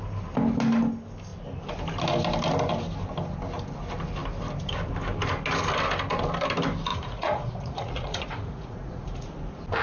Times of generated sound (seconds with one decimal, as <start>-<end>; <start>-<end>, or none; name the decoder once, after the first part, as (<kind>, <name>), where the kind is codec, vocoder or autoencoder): 6.9-9.3 (vocoder, Vocos)